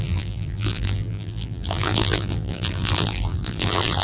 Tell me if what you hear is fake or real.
fake